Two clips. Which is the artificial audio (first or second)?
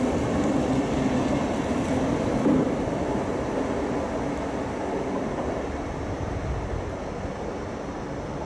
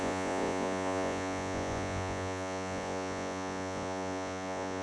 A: second